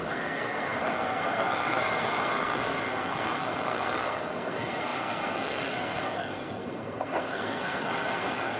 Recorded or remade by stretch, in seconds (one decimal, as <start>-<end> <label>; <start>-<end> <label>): 0.0-8.6 remade